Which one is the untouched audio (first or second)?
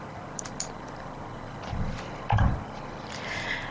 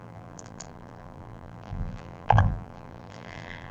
first